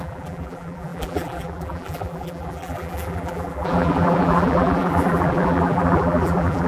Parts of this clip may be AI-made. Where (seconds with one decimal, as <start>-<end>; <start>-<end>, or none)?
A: 0.0-6.7